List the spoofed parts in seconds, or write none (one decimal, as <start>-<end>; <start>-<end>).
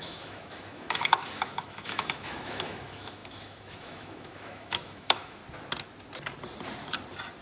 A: 0.0-5.4